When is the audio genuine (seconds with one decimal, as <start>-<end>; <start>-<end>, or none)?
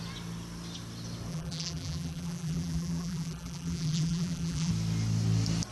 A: 0.0-1.3; 4.7-5.7